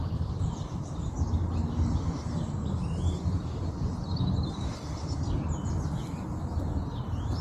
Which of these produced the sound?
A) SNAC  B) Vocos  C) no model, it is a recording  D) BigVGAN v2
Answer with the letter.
C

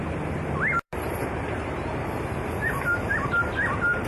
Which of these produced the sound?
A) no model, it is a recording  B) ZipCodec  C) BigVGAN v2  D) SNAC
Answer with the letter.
C